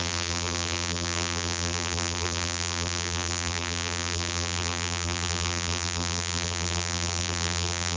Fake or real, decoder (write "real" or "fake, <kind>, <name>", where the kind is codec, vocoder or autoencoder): fake, vocoder, BigVGAN v2